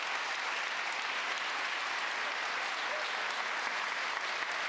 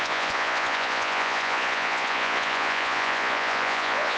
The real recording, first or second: first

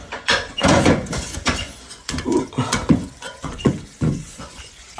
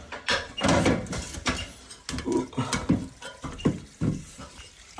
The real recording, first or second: second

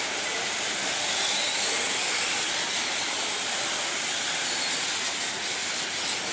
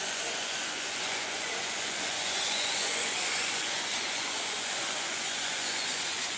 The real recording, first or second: first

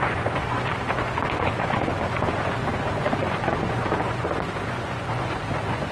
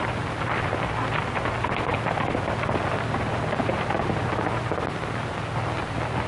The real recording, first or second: second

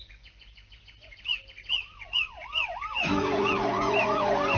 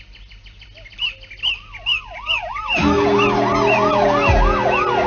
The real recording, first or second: second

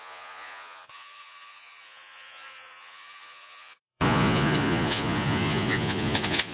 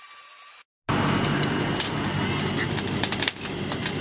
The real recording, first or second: second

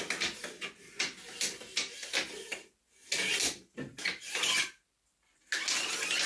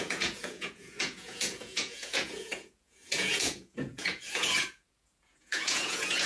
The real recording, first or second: first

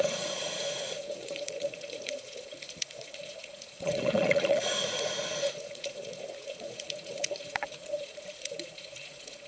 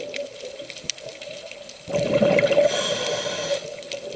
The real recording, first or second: second